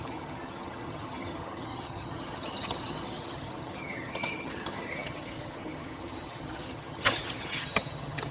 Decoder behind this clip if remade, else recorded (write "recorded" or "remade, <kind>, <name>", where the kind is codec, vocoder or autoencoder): remade, vocoder, HiFi-GAN